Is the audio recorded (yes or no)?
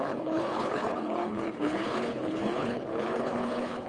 no